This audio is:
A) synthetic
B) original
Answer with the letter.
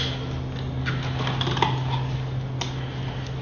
B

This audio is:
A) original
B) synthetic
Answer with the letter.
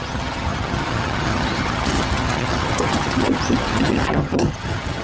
B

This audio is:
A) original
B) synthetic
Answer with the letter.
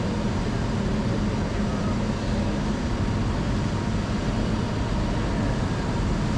A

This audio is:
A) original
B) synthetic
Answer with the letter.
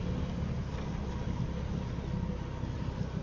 A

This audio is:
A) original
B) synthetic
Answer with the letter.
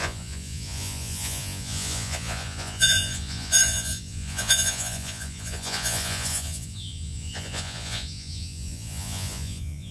B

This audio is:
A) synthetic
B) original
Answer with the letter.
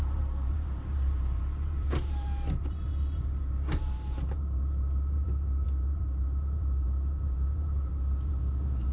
A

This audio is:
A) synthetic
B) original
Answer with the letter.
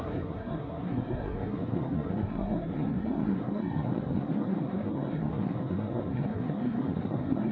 A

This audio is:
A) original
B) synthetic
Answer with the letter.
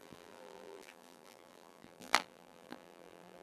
B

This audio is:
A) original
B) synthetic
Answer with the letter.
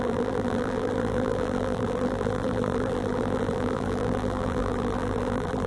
B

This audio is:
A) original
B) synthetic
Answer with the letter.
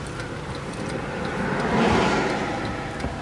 A